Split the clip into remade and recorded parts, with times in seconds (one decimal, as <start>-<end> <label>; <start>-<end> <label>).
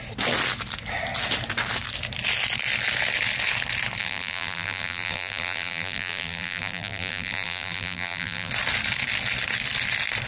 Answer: 0.0-4.0 recorded; 4.0-8.5 remade; 8.5-10.3 recorded